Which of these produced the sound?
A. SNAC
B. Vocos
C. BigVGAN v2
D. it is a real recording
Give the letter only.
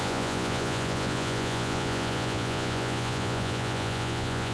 B